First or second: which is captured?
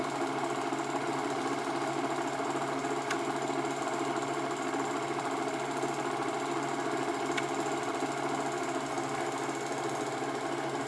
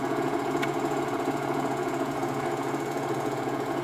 first